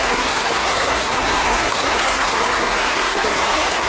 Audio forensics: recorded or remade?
remade